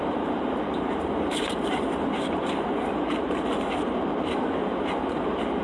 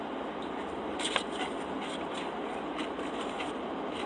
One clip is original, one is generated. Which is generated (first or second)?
first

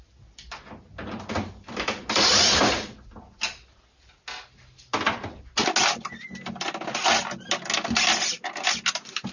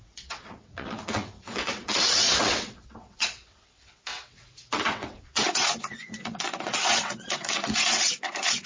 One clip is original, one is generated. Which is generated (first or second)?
second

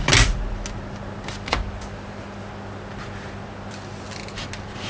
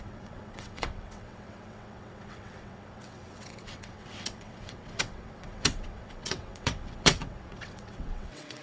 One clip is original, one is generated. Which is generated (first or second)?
second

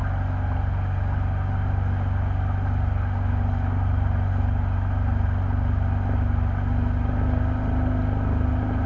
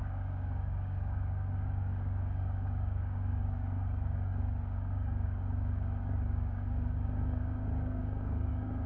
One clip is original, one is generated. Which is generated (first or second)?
second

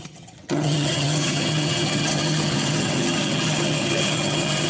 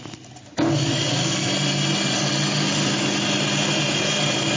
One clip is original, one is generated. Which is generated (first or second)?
first